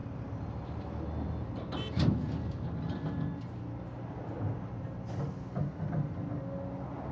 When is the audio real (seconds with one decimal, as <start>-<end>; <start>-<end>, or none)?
0.0-7.1